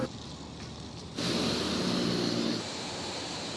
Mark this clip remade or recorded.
recorded